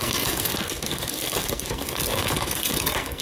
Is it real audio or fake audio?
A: fake